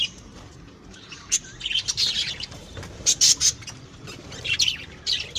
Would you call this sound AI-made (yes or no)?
yes